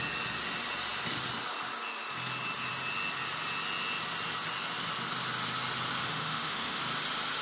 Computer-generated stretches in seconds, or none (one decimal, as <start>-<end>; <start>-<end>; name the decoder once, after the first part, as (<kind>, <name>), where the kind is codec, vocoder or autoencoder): 6.0-6.8 (autoencoder, DAC-VAE)